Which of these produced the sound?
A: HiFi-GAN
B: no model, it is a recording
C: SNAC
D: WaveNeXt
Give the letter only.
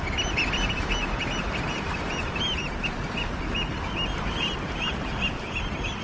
B